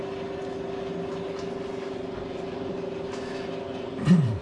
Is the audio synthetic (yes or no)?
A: no